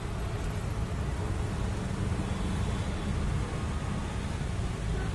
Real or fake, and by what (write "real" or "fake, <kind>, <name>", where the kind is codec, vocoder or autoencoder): real